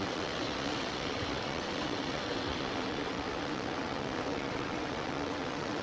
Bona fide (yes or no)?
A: no